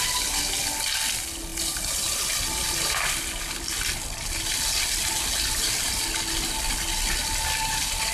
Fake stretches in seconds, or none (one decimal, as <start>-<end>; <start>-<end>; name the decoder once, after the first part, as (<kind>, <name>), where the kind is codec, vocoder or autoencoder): none